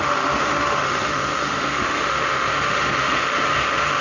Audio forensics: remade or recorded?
remade